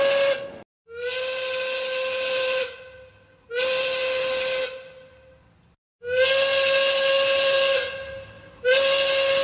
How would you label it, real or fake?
real